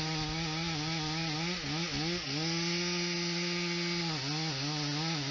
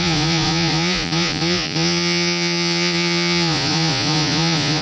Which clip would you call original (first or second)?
first